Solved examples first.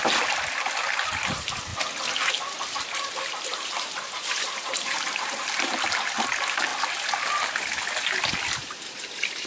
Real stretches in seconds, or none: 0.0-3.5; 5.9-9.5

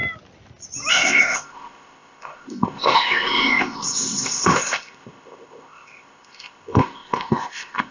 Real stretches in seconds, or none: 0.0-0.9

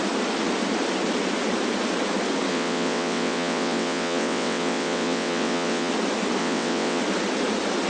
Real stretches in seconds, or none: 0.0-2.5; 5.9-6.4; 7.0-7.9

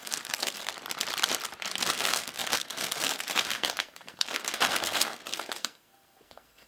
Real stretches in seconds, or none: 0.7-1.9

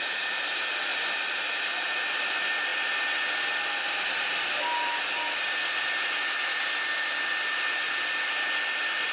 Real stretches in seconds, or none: 0.0-9.1